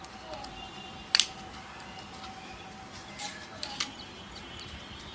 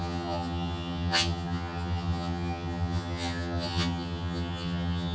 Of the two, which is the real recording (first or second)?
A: first